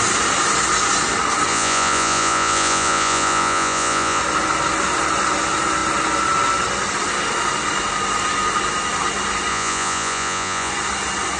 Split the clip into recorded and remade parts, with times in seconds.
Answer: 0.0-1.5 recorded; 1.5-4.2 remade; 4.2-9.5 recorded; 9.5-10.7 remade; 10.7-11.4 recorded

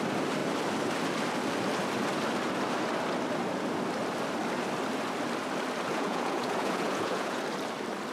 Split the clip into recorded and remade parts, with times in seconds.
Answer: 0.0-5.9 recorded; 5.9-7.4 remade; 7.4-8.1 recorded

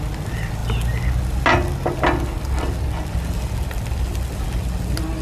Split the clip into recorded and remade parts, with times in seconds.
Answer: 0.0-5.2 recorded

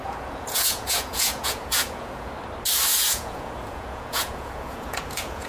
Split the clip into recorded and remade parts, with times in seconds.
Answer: 0.0-2.3 remade; 2.3-2.9 recorded; 2.9-5.5 remade

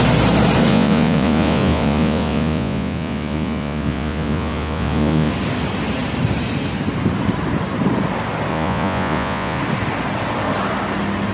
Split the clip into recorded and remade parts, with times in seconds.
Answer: 0.0-0.7 recorded; 0.7-5.3 remade; 5.3-8.5 recorded; 8.5-9.6 remade; 9.6-11.3 recorded